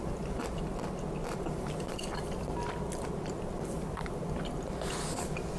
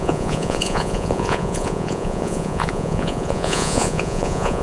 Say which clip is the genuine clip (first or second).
first